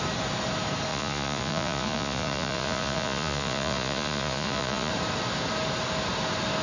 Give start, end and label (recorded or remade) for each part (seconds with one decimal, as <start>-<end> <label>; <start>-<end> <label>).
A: 0.0-0.9 recorded; 0.9-4.9 remade; 4.9-6.6 recorded